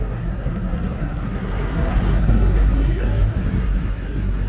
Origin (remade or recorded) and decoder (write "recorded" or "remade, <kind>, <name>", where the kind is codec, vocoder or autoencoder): remade, codec, SNAC